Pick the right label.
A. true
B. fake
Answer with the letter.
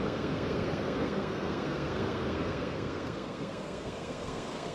B